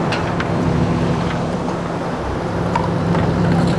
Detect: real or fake fake